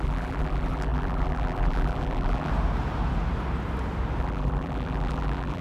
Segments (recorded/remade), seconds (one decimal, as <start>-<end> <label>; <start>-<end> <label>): 0.0-2.5 remade; 2.5-4.2 recorded; 4.2-5.6 remade